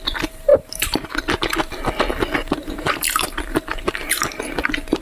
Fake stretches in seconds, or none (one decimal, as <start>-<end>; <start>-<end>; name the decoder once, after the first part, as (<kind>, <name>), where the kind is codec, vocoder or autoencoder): 0.5-1.2 (vocoder, BigVGAN v2); 2.6-4.5